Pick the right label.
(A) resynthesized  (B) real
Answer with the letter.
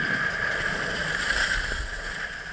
B